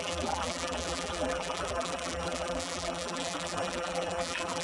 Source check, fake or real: fake